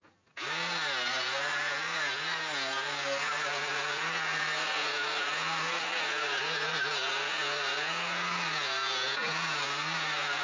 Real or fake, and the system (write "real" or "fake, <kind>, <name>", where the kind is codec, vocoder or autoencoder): real